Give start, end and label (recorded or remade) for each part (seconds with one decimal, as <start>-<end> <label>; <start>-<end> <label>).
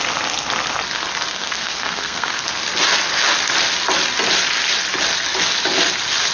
0.0-1.3 recorded; 1.3-2.4 remade; 2.4-6.3 recorded